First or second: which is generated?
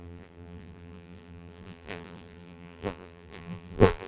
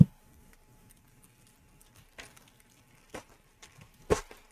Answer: first